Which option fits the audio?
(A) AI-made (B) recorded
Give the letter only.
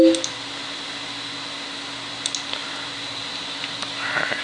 B